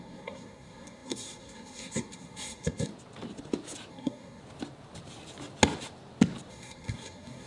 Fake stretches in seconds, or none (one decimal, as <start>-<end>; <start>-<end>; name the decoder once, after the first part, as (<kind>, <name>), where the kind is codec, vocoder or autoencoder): 0.0-2.9 (codec, SNAC); 3.9-4.4; 6.5-7.5